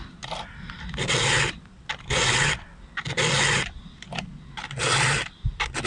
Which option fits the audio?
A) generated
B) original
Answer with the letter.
B